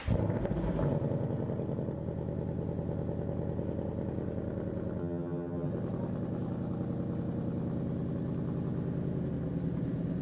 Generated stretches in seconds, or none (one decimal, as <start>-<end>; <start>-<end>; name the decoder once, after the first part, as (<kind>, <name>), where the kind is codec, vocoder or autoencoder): 5.0-5.7 (vocoder, HiFi-GAN)